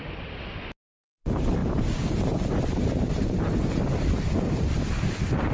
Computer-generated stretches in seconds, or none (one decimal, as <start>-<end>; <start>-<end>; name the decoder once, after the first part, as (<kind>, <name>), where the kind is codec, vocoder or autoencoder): 1.6-4.6 (vocoder, BigVGAN v2)

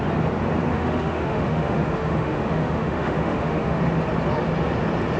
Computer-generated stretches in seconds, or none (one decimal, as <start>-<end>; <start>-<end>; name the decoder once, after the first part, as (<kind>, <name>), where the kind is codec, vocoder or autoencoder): 0.7-3.8 (autoencoder, DAC-VAE)